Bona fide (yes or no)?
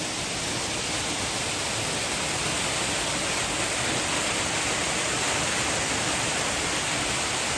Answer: yes